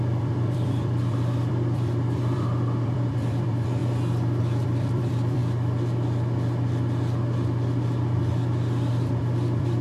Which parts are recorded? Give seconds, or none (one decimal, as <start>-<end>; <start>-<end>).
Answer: 3.8-4.4; 5.4-8.9